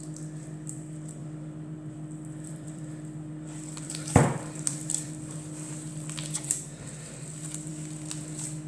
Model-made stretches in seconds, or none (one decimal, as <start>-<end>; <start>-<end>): 1.2-5.9